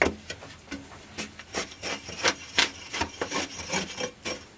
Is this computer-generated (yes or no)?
no